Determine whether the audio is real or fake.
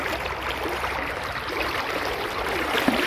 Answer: real